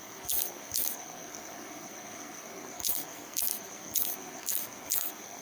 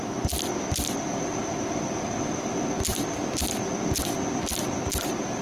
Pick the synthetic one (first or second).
first